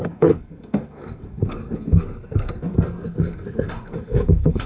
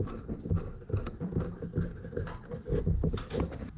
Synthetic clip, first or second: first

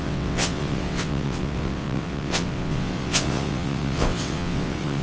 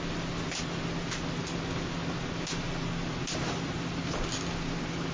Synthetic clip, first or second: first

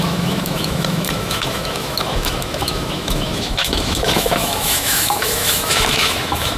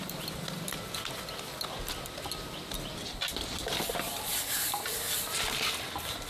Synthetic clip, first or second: first